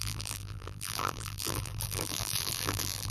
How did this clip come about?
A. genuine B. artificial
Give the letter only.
B